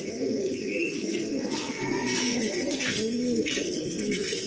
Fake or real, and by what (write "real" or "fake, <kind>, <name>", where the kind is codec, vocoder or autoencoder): fake, codec, SNAC